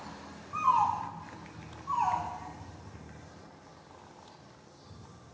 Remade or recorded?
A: recorded